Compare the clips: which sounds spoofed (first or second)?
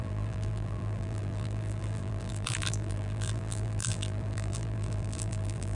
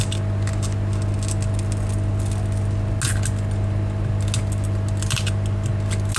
first